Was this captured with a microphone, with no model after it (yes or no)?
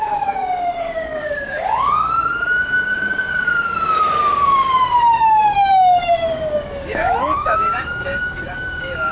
no